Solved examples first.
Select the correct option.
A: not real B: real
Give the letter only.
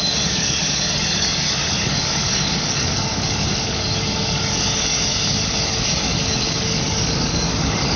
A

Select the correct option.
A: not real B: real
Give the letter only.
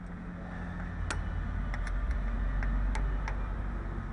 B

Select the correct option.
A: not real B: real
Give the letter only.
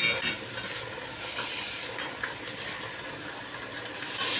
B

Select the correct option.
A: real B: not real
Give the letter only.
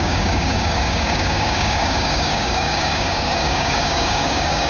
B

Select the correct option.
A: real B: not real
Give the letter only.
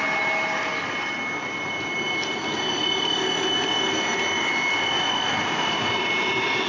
A